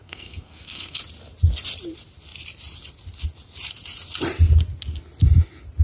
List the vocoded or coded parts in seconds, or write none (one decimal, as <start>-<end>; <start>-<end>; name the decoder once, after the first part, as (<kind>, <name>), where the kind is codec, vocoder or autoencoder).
0.0-1.0 (codec, SNAC)